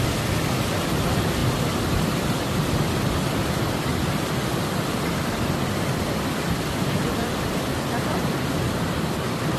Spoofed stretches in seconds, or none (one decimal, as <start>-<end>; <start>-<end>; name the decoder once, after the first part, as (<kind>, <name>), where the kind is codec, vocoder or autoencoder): none